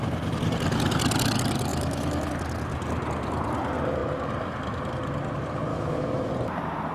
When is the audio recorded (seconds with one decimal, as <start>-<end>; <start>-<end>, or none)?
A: 0.0-1.7; 2.3-5.7; 6.3-6.9